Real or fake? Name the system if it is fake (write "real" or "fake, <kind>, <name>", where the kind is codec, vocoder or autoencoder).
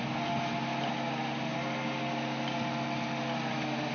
real